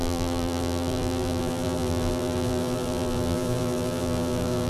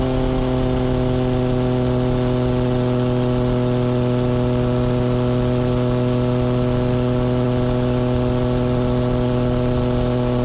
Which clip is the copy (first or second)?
first